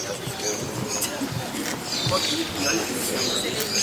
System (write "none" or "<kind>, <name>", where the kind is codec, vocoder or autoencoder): none